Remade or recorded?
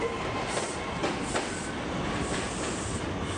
recorded